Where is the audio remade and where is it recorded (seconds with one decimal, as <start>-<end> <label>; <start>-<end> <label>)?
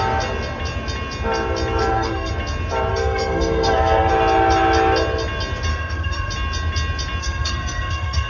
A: 0.0-1.8 recorded; 1.8-2.3 remade; 2.3-2.9 recorded; 2.9-4.1 remade; 4.1-5.7 recorded; 5.7-6.3 remade; 6.3-7.2 recorded; 7.2-8.3 remade